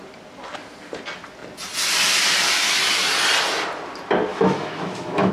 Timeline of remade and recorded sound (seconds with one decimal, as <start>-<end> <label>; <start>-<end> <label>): 0.0-4.3 recorded; 4.3-5.3 remade